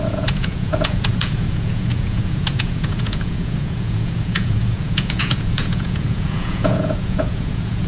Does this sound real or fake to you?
fake